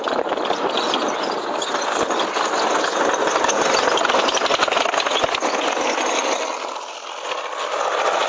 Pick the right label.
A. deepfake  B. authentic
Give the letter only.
B